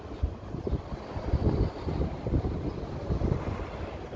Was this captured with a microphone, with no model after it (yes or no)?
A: yes